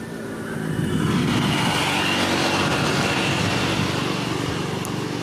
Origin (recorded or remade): recorded